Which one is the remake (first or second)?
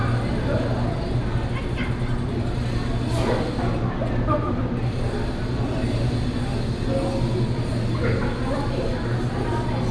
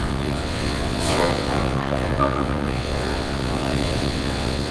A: second